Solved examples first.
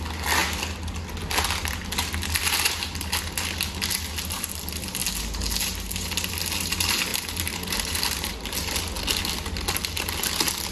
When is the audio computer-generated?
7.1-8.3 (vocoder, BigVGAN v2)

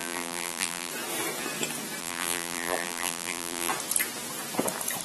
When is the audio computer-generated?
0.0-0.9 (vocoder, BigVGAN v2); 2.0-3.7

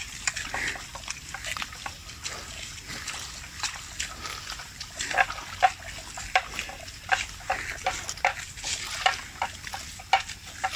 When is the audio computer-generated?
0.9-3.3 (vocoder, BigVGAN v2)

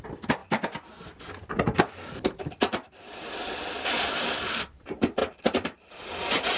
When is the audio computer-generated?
none